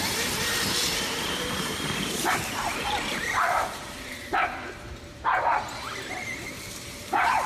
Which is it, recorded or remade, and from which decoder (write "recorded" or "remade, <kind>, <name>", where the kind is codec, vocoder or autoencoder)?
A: remade, vocoder, BigVGAN v2